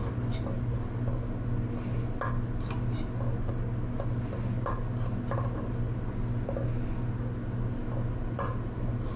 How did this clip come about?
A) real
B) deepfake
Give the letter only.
A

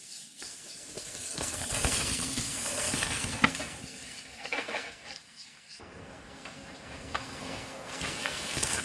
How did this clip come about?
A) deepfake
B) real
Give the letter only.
A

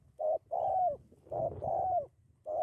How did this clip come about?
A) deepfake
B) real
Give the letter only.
B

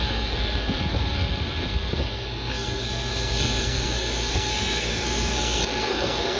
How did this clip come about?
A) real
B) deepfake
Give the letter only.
B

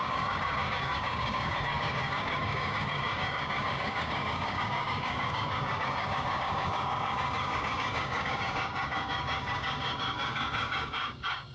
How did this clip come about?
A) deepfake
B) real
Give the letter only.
A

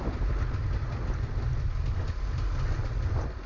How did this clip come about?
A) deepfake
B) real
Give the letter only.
B